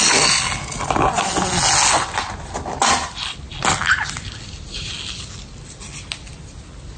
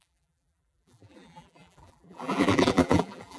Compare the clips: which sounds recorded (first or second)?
first